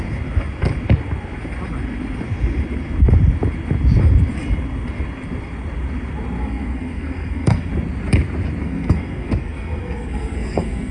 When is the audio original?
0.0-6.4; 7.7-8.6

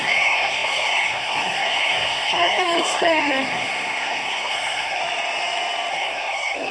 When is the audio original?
5.0-5.9

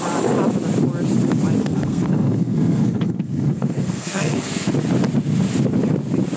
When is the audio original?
0.0-1.6; 4.7-6.4

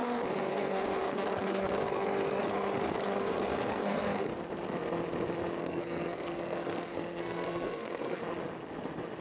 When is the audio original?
0.0-0.5; 4.3-5.6; 8.2-9.2

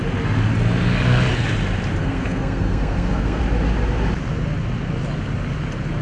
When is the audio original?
0.0-2.0; 3.4-6.0